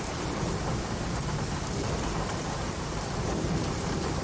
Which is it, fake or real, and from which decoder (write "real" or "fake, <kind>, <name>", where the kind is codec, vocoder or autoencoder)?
fake, vocoder, BigVGAN v2